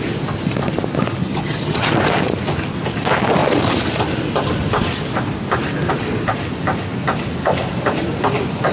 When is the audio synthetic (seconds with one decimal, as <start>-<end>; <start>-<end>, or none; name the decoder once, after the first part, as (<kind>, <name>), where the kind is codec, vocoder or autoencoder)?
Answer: 1.2-1.9 (vocoder, HiFi-GAN)